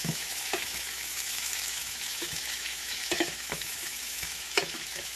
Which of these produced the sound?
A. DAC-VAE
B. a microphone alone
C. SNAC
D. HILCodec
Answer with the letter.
A